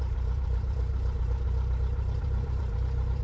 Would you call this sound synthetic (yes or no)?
yes